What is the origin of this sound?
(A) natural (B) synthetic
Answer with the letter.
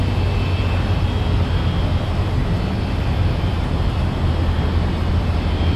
A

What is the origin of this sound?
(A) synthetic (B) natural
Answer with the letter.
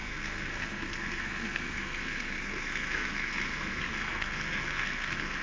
A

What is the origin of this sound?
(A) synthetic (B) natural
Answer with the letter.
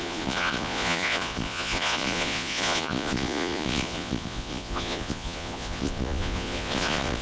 A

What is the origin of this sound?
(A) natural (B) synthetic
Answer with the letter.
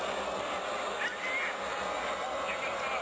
A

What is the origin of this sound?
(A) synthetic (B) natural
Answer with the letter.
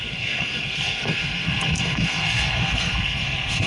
A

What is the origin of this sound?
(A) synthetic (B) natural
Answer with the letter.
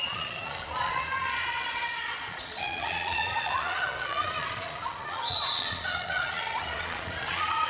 A